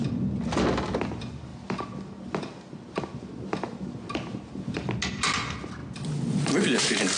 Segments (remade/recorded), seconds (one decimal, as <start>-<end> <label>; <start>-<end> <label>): 0.0-7.2 recorded

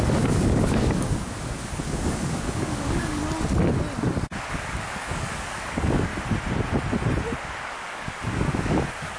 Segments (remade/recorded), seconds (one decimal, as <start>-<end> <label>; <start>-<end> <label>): 0.0-3.2 remade; 3.2-4.4 recorded; 4.4-6.1 remade; 6.1-7.6 recorded; 7.6-9.2 remade

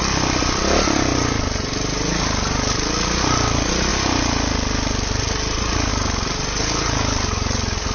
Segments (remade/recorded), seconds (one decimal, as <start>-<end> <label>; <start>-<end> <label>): 0.0-7.9 recorded

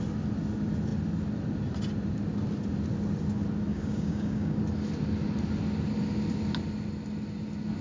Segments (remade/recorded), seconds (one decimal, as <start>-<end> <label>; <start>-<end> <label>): 0.0-3.7 recorded; 3.7-4.6 remade; 4.6-7.8 recorded

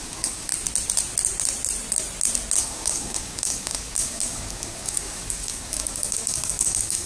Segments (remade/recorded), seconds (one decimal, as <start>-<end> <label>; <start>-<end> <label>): 0.0-0.5 remade; 0.5-2.6 recorded; 2.6-7.1 remade

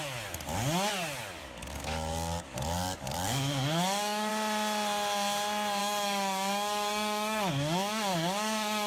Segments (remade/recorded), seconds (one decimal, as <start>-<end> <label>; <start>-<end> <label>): 0.0-1.4 recorded; 1.4-4.3 remade; 4.3-5.8 recorded; 5.8-8.9 remade

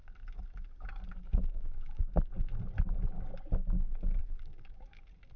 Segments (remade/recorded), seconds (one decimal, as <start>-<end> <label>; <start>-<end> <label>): 0.0-2.3 remade; 2.3-4.2 recorded; 4.2-5.0 remade; 5.0-5.4 recorded

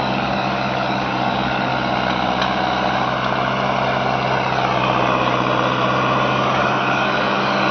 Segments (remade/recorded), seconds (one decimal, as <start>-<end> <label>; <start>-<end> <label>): 0.0-1.7 remade; 1.7-6.3 recorded; 6.3-7.7 remade